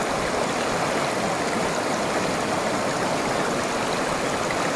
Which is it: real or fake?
real